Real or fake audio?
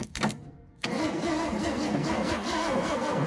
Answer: fake